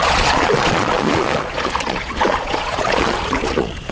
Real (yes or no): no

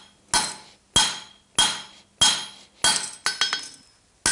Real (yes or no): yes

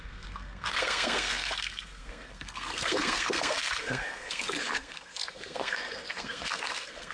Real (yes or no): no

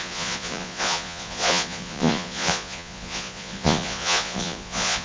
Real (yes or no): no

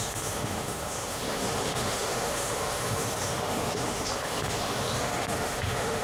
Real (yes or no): no